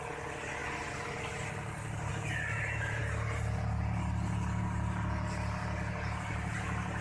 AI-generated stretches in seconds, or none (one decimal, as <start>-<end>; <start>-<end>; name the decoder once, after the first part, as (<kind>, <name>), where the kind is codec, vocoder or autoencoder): none